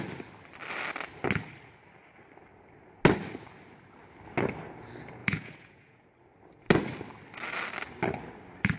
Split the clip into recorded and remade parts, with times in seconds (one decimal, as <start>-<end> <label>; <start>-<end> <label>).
0.0-5.2 recorded; 5.2-6.1 remade; 6.1-8.8 recorded